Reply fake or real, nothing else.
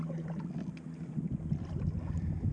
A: real